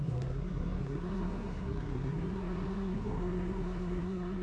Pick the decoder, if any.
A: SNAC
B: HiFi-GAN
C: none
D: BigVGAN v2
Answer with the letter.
A